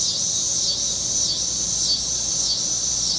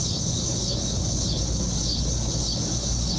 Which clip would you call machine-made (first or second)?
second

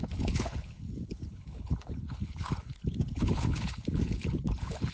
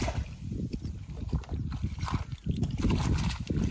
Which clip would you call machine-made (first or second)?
first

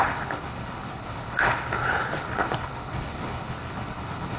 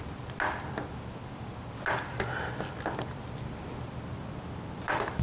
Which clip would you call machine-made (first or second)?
first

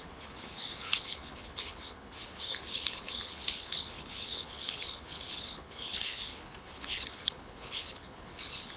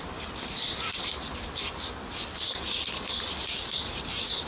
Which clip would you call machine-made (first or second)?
first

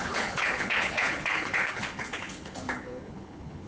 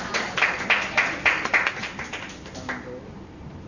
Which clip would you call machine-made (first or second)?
first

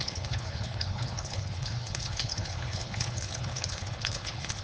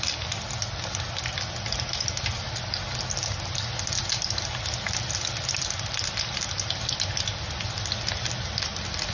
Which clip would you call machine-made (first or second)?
first